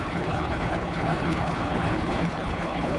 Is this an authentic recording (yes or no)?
no